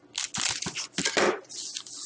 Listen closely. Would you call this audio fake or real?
real